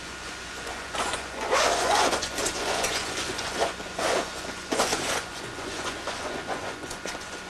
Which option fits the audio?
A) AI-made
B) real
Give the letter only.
A